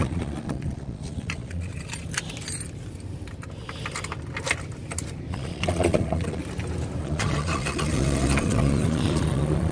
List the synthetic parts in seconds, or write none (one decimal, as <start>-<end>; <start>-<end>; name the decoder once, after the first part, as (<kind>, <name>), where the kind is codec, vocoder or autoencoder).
0.0-1.7 (vocoder, Vocos); 5.3-6.4; 7.0-9.7